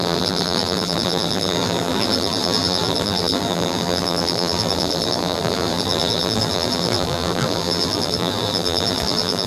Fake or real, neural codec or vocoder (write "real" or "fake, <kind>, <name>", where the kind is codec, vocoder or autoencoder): fake, vocoder, BigVGAN v2